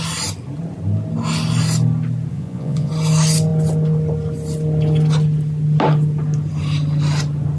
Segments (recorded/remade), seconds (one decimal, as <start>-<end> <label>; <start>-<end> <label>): 0.0-2.3 recorded; 2.3-2.9 remade; 2.9-7.6 recorded